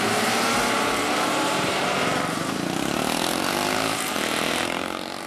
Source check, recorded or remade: remade